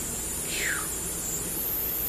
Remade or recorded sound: recorded